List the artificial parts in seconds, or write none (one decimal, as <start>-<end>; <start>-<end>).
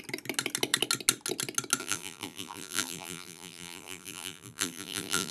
1.8-5.3